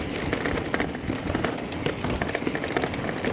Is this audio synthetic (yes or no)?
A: no